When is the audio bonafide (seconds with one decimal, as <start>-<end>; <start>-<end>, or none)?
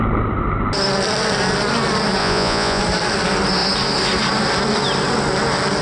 0.0-2.2; 2.8-5.8